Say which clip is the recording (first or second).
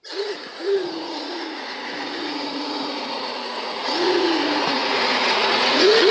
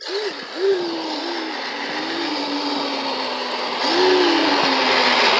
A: second